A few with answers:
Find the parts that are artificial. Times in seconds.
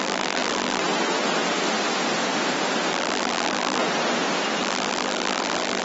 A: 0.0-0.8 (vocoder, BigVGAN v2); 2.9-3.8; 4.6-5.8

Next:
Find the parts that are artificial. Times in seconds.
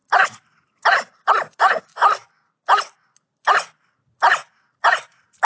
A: 0.0-2.2 (vocoder, BigVGAN v2)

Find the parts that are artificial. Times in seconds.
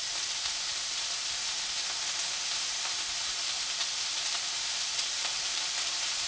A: 0.0-0.7 (vocoder, BigVGAN v2); 2.6-6.3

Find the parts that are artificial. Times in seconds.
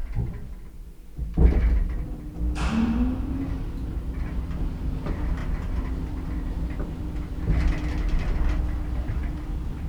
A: 0.0-0.7 (vocoder, BigVGAN v2); 9.2-9.9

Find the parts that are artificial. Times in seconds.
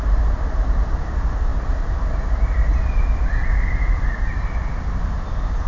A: none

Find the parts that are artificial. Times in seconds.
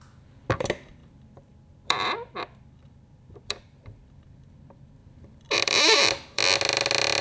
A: 1.0-4.5 (vocoder, BigVGAN v2); 5.0-6.4